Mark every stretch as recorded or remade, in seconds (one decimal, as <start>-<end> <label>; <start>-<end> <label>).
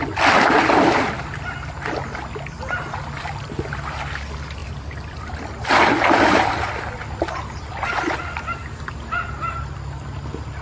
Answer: 0.0-10.6 recorded